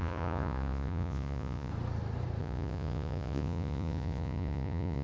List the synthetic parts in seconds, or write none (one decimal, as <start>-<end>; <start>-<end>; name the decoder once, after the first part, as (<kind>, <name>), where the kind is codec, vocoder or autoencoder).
0.0-1.7 (vocoder, Vocos); 2.4-5.0